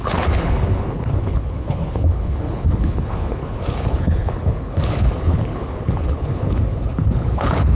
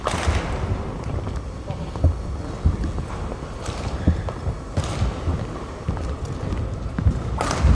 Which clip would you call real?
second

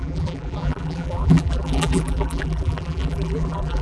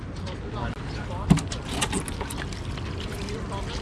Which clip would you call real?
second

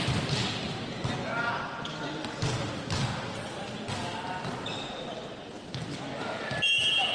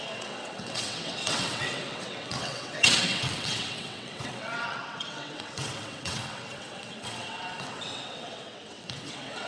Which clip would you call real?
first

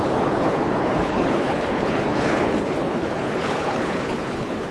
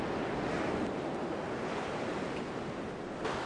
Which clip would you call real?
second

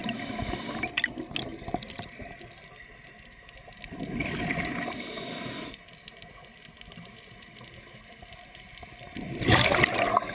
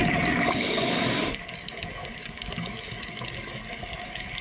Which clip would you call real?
first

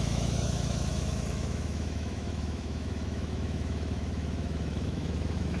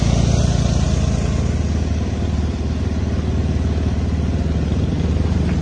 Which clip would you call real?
second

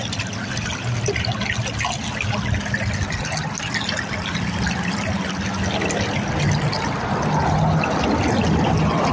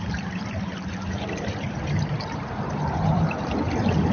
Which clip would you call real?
first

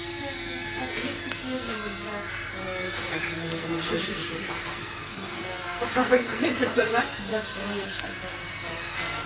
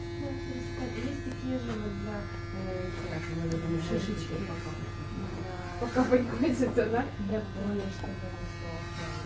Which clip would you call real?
second